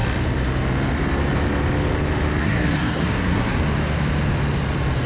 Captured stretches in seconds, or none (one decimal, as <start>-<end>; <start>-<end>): 0.0-2.4; 3.6-5.1